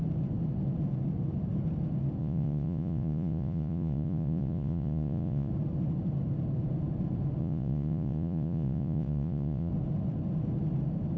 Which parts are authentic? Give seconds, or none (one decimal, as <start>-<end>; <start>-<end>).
0.0-2.2; 5.5-7.4; 9.7-11.2